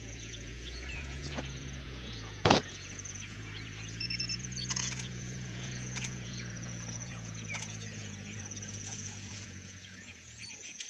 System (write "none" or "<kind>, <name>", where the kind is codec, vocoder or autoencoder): vocoder, Vocos